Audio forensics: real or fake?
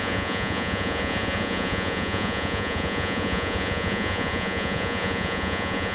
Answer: fake